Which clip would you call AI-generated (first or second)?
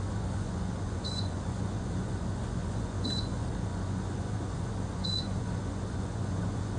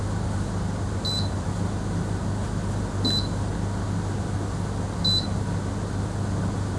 first